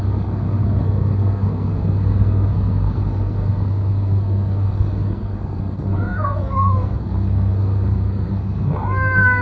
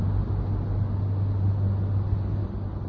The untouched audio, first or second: second